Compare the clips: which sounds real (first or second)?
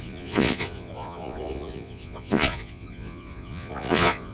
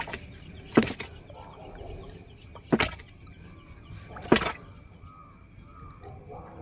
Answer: second